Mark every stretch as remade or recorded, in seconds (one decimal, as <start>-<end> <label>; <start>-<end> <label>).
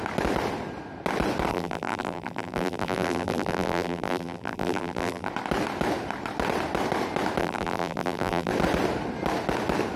0.0-1.5 recorded; 1.5-5.3 remade; 5.3-7.4 recorded; 7.4-8.5 remade; 8.5-10.0 recorded